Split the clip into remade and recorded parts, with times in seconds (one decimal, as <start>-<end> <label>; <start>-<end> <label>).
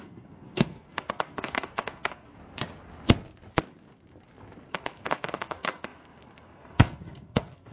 0.0-2.4 remade; 2.4-4.7 recorded; 4.7-7.7 remade